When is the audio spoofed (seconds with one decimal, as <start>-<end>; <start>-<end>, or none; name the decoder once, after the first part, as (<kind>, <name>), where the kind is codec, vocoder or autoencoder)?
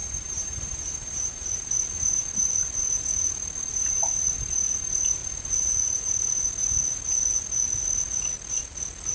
0.0-1.7 (vocoder, BigVGAN v2)